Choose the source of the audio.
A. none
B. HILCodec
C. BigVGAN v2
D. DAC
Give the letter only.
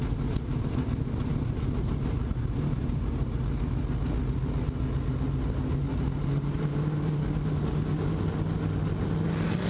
A